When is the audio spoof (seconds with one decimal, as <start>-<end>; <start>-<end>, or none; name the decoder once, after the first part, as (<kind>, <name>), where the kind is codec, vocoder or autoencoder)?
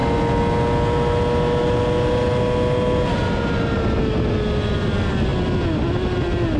none